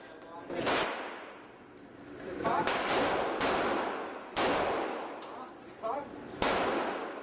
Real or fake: real